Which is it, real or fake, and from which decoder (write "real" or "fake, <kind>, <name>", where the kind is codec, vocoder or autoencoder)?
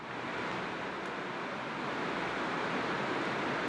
real